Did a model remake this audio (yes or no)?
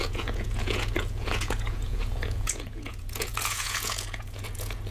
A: yes